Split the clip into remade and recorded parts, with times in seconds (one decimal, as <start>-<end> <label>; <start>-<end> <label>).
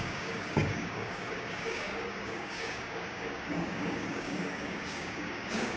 0.0-5.8 remade